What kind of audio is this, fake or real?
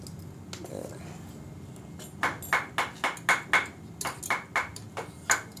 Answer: real